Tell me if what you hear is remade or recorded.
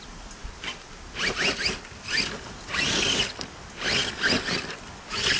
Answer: recorded